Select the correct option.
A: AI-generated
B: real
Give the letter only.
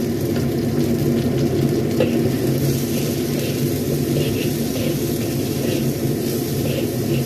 B